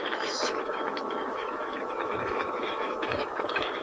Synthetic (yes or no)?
yes